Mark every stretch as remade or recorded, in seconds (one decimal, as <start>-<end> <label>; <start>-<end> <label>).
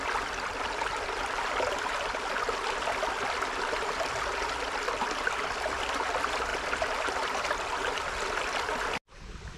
0.0-9.6 recorded